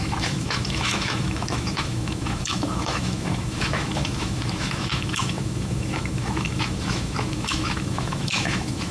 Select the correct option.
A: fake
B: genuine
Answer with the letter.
A